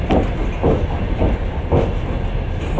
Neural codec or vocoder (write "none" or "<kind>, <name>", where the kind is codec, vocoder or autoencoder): none